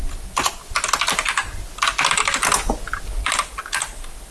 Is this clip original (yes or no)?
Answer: yes